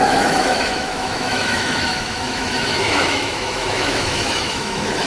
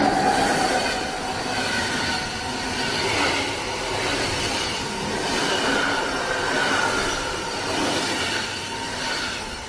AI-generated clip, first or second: first